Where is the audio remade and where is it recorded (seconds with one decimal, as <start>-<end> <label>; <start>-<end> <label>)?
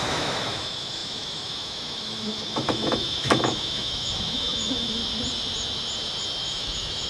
0.0-5.0 remade; 5.0-6.4 recorded; 6.4-7.1 remade